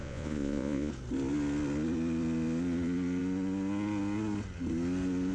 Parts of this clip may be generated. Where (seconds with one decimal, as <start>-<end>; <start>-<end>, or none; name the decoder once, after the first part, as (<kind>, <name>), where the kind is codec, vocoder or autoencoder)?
0.0-0.9 (vocoder, Vocos)